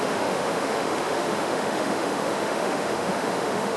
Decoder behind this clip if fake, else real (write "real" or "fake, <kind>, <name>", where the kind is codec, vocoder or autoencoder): fake, autoencoder, DAC-VAE